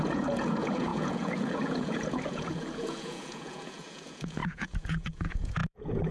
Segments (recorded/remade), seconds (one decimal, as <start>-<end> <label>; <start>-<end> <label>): 0.0-6.1 remade